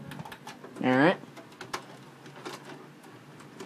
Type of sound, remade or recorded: recorded